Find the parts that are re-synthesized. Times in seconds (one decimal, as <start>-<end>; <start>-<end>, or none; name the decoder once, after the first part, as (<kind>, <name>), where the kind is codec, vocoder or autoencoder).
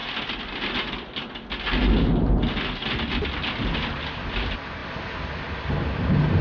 none